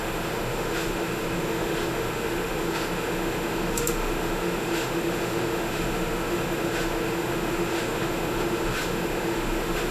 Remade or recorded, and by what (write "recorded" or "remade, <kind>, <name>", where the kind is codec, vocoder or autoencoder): remade, autoencoder, DAC-VAE